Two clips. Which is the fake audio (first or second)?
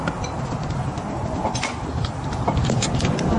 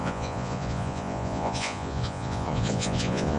second